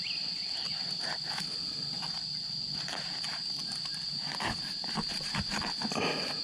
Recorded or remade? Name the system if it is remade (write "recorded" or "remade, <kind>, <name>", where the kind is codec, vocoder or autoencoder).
recorded